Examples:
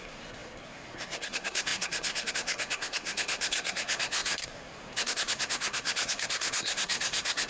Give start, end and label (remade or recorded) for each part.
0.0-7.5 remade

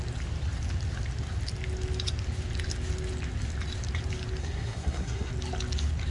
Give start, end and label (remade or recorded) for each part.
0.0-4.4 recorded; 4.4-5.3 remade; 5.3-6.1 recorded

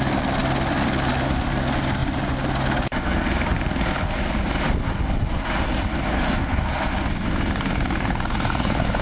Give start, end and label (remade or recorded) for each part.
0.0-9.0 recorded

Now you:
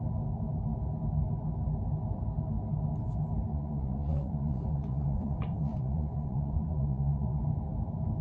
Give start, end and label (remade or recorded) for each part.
0.0-3.5 recorded; 3.5-7.4 remade; 7.4-8.2 recorded

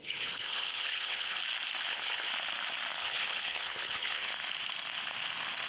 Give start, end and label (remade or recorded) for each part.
0.0-1.4 remade; 1.4-1.9 recorded; 1.9-2.3 remade; 2.3-3.0 recorded; 3.0-4.3 remade; 4.3-5.7 recorded

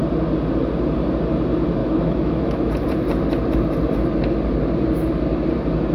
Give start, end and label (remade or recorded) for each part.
0.0-1.8 recorded; 1.8-2.7 remade; 2.7-5.9 recorded

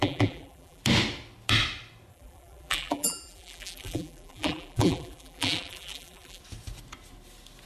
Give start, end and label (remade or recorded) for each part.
0.0-0.8 remade; 0.8-2.1 recorded; 2.1-6.4 remade; 6.4-7.7 recorded